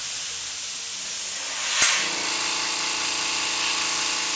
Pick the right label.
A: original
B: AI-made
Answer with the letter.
A